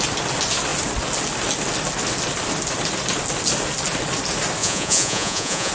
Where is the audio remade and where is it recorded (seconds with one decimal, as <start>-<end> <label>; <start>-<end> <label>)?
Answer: 0.0-4.6 recorded; 4.6-5.7 remade